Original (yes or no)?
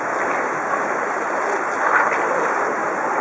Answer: yes